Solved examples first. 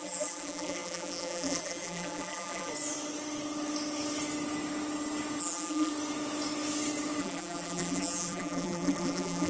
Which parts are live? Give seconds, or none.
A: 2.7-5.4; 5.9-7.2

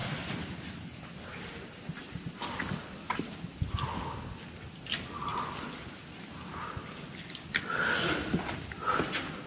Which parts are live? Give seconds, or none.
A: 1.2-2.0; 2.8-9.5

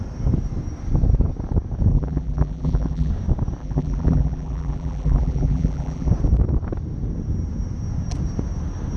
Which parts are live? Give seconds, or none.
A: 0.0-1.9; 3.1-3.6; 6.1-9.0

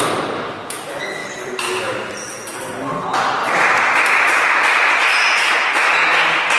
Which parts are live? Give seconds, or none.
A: 0.0-1.2; 1.9-3.4; 4.1-6.6

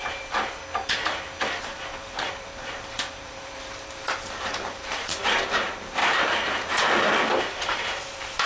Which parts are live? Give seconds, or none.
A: 0.6-1.6; 6.0-7.3

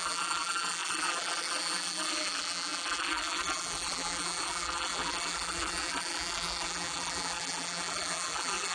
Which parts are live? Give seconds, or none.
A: none

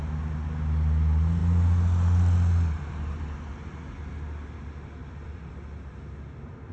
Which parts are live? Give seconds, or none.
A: 0.0-5.0; 6.2-6.7

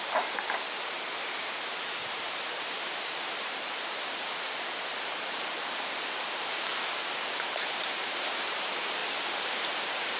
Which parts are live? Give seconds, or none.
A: 6.7-7.7; 9.0-9.5